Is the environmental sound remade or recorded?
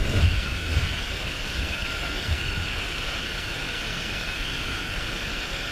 remade